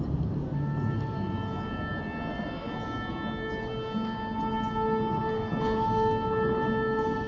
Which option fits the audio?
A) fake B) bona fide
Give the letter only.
B